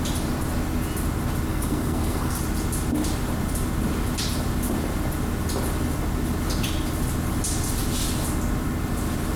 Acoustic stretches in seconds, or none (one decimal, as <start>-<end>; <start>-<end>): 0.0-1.5; 2.4-9.4